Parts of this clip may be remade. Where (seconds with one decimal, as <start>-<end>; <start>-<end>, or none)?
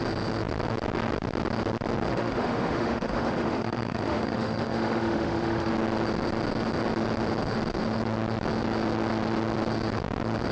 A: 2.1-5.7